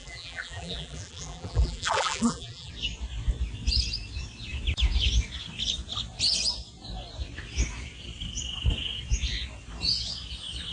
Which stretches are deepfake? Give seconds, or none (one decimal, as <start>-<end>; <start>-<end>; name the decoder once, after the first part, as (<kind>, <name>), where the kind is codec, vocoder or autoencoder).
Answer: 0.0-2.7 (vocoder, BigVGAN v2)